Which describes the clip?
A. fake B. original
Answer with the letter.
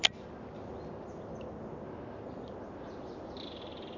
B